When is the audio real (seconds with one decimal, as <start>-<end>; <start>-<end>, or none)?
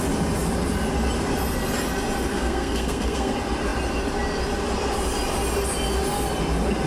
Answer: 0.0-2.3; 3.3-6.9